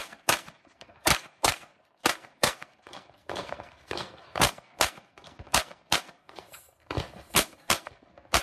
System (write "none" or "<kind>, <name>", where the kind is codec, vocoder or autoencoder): codec, SNAC